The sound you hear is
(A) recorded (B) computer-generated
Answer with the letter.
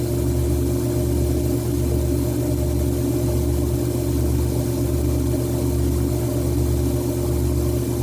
A